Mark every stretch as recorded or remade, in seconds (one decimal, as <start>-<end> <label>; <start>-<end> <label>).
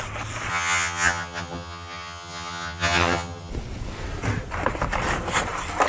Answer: 0.0-0.5 recorded; 0.5-3.5 remade; 3.5-5.9 recorded